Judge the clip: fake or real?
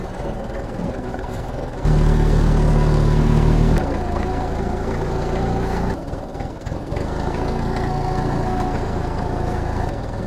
fake